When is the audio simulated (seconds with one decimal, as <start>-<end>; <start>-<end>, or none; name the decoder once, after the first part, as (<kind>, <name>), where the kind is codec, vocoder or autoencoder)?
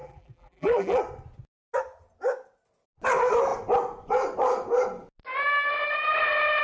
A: 0.0-1.0 (vocoder, BigVGAN v2)